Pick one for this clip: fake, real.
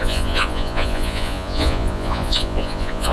fake